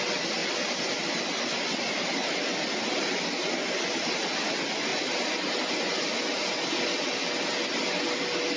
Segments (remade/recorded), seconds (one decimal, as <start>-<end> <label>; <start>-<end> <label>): 0.0-8.6 recorded